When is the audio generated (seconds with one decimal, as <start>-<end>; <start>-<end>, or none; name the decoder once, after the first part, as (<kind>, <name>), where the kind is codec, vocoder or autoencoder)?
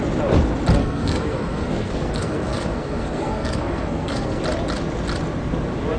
0.8-4.4 (codec, SNAC)